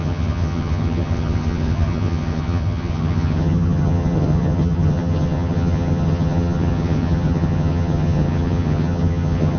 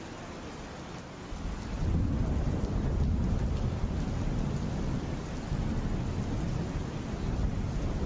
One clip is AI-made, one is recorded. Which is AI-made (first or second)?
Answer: first